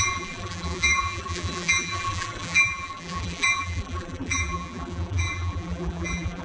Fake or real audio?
fake